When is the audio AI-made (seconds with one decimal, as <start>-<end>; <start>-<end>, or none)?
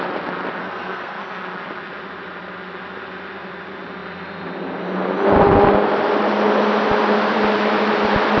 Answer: 0.6-1.2